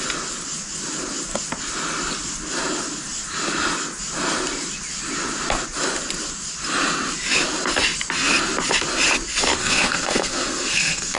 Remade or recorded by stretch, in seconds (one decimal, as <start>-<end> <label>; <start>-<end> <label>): 0.0-9.6 recorded; 9.6-11.2 remade